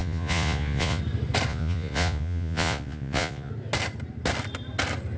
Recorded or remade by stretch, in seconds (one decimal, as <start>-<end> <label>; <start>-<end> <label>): 0.0-1.0 remade; 1.0-1.5 recorded; 1.5-3.5 remade; 3.5-5.2 recorded